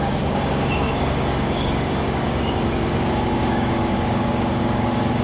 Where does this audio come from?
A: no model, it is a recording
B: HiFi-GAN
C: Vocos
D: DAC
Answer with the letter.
D